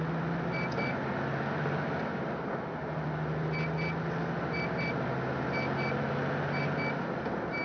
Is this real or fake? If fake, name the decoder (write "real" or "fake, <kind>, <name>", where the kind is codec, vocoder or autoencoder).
real